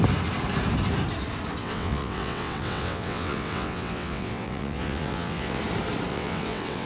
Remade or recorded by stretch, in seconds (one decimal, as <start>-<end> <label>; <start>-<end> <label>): 0.0-1.6 recorded; 1.6-5.6 remade; 5.6-6.1 recorded; 6.1-6.9 remade